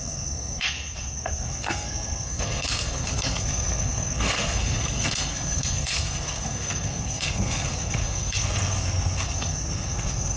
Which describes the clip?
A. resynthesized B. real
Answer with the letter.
A